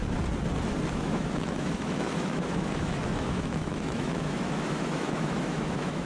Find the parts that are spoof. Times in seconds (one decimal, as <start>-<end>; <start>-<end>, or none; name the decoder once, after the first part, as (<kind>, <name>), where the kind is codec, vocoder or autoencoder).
0.9-6.1 (autoencoder, DAC-VAE)